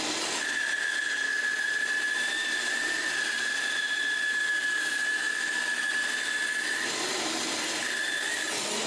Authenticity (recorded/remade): recorded